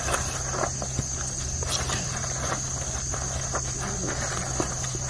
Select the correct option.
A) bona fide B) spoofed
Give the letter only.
A